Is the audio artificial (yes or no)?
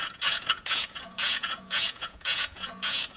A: yes